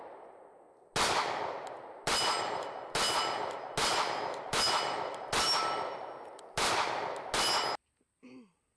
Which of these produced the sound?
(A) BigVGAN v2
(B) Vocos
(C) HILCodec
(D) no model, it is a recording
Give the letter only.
D